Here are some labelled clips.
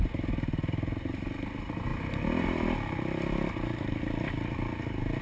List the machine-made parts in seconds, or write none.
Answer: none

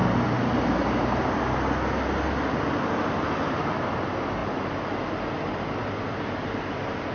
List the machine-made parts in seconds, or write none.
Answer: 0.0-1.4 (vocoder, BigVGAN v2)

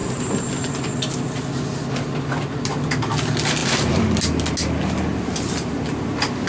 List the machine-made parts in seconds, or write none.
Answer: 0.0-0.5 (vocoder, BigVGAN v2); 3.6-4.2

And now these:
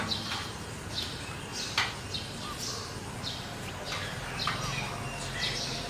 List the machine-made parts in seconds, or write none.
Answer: 0.0-1.5 (vocoder, BigVGAN v2); 5.0-5.9

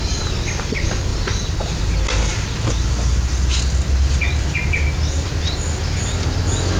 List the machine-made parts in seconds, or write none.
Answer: 1.1-1.7 (vocoder, BigVGAN v2)

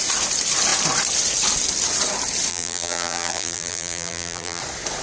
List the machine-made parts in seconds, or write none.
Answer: 2.5-4.6 (vocoder, BigVGAN v2)

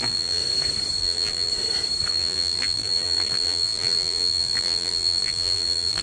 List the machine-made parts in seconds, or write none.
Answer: 0.0-0.4 (vocoder, BigVGAN v2); 1.0-1.5; 2.1-6.0

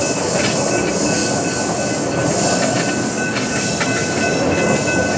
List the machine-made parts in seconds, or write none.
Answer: none